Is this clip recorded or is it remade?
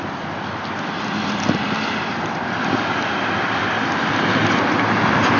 recorded